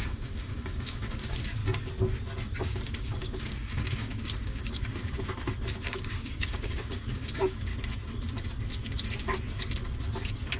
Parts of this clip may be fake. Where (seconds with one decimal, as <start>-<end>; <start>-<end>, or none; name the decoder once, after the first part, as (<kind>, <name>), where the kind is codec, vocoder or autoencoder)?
0.0-1.6 (codec, DAC); 2.6-5.0; 5.8-7.7